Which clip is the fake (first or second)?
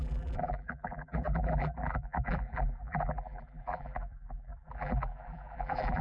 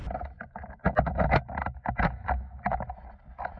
first